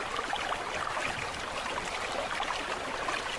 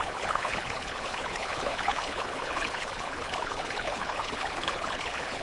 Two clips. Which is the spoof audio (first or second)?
second